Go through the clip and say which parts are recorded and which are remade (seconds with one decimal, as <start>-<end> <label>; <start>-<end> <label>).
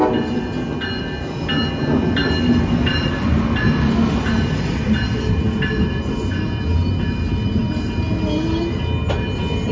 0.0-9.7 recorded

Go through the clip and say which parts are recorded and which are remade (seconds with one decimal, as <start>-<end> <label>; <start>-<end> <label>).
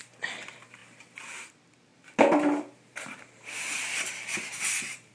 0.0-1.9 recorded; 1.9-5.1 remade